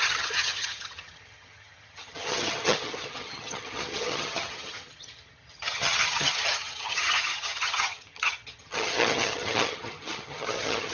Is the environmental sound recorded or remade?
remade